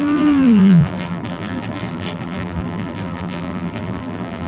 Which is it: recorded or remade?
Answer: remade